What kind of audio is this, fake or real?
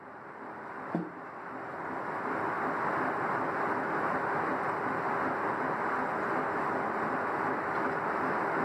real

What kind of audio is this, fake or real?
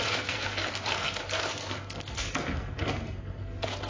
fake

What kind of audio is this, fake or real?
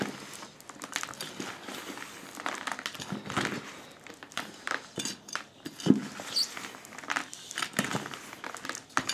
real